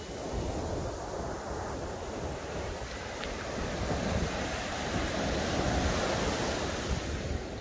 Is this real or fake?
real